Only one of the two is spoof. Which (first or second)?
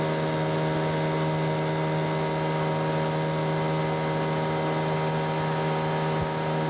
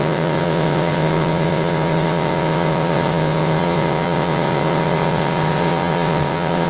second